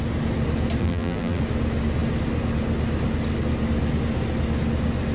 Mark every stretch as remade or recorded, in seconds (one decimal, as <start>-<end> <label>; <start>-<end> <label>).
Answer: 0.0-0.8 recorded; 0.8-1.4 remade; 1.4-5.1 recorded